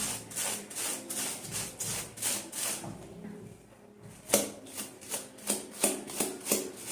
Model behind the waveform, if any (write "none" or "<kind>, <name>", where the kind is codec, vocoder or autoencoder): none